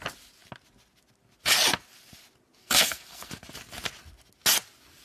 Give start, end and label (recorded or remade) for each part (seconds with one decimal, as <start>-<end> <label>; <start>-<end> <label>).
0.0-2.6 recorded; 2.6-3.3 remade; 3.3-5.0 recorded